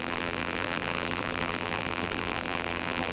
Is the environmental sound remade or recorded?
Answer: remade